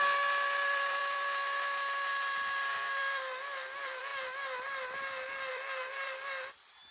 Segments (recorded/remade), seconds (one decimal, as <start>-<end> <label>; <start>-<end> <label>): 0.0-2.1 remade; 2.1-2.7 recorded; 2.7-4.1 remade; 4.1-5.5 recorded; 5.5-6.9 remade